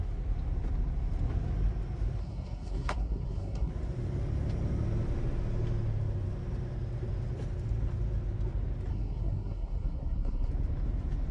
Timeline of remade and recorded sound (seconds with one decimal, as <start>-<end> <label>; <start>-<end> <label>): 0.0-2.2 recorded; 2.2-3.7 remade; 3.7-8.9 recorded; 8.9-10.5 remade; 10.5-11.3 recorded